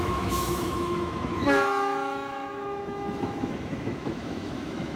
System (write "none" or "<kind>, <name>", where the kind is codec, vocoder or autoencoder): autoencoder, DAC-VAE